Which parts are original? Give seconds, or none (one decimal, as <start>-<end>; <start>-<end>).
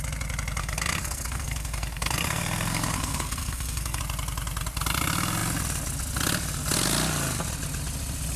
0.0-0.6; 4.0-8.4